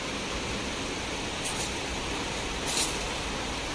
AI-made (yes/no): no